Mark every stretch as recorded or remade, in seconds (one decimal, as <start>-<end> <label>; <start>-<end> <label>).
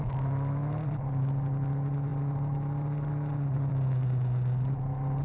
0.0-5.2 recorded